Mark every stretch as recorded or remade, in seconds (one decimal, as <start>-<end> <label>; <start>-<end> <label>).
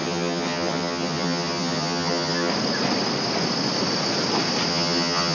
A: 0.0-2.5 remade; 2.5-4.7 recorded; 4.7-5.3 remade